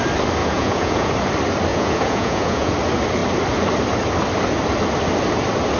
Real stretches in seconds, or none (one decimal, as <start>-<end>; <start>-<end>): 0.0-0.4; 1.1-1.7; 2.7-5.8